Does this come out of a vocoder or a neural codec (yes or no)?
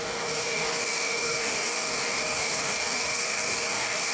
yes